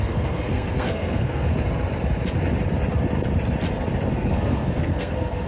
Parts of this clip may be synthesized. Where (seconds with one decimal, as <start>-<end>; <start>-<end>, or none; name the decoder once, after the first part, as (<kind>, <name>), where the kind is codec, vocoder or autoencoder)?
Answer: 0.0-1.5 (codec, SNAC); 4.1-5.5

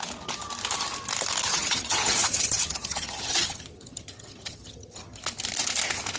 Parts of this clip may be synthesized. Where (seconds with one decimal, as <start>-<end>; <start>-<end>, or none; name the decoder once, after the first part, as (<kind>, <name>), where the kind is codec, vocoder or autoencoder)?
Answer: 1.5-5.2 (vocoder, HiFi-GAN)

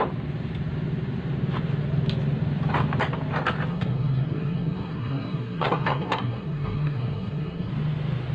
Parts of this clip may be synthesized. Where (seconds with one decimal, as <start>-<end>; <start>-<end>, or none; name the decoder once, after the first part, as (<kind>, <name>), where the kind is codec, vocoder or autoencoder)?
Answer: 3.7-7.7 (codec, SNAC)

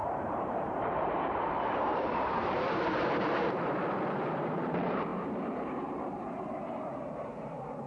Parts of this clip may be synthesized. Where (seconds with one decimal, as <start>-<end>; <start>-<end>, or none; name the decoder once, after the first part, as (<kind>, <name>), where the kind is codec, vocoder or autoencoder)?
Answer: 0.0-3.8 (vocoder, BigVGAN v2); 4.4-7.9